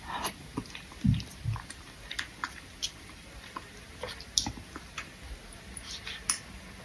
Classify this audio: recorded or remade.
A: remade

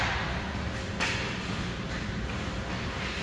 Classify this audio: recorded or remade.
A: recorded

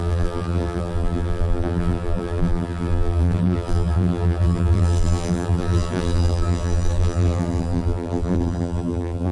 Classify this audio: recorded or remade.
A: remade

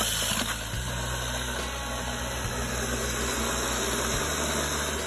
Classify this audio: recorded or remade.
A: recorded